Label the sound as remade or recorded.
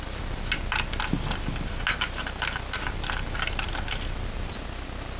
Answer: recorded